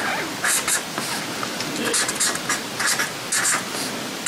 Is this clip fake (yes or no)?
no